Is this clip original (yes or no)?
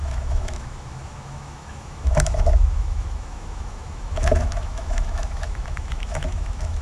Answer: no